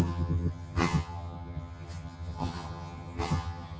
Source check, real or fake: fake